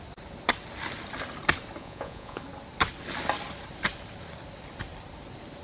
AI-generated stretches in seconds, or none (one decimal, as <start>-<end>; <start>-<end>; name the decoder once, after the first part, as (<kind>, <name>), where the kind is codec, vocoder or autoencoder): 1.8-2.4 (vocoder, Vocos)